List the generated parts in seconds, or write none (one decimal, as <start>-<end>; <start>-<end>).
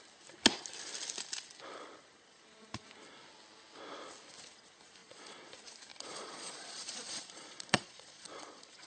5.0-5.5; 5.9-8.9